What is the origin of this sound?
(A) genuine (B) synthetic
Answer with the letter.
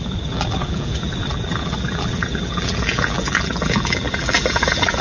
B